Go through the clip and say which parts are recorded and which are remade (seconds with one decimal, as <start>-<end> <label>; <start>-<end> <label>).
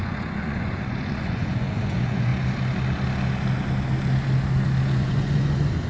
0.0-2.3 remade; 2.3-4.9 recorded; 4.9-5.9 remade